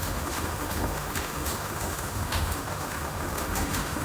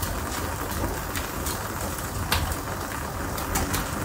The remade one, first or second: first